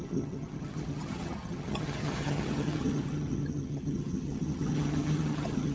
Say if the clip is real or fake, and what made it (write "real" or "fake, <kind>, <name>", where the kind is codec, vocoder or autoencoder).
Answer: fake, vocoder, HiFi-GAN